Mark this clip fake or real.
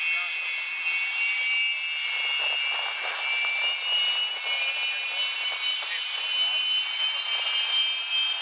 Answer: real